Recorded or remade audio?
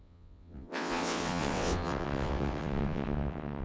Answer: remade